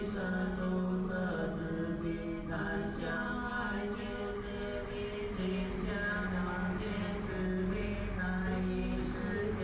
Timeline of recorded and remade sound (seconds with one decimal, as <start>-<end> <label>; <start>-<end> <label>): 0.0-9.6 recorded